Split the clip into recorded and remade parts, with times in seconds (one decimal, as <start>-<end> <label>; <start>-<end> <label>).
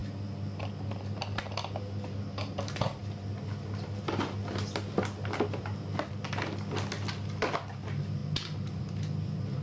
0.0-9.6 recorded